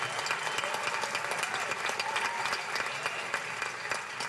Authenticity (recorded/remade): recorded